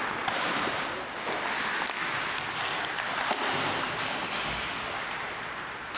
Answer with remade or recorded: recorded